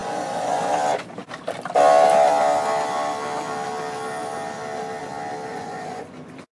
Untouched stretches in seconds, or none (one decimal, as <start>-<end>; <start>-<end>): 0.7-5.5